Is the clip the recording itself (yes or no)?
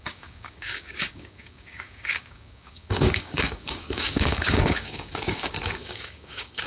no